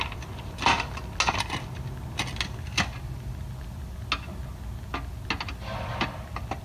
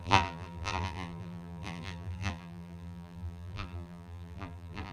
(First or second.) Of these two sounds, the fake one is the second